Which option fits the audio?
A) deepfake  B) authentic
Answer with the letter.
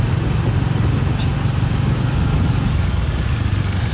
B